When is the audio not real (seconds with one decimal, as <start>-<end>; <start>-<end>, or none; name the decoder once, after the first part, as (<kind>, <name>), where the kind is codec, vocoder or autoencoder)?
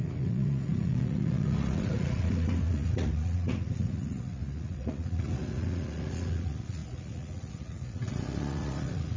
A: 0.0-9.2 (vocoder, Vocos)